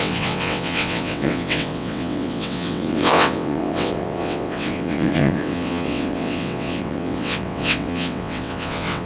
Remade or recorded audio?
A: remade